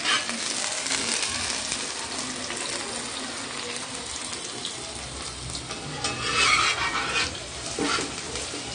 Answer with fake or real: real